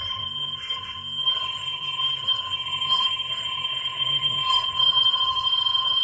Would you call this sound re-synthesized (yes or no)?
yes